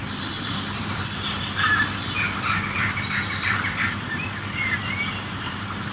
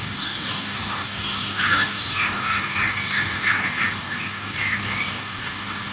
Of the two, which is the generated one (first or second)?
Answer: second